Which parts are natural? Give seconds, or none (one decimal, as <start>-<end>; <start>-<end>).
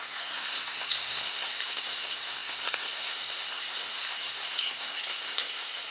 none